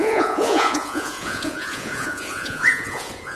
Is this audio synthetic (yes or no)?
yes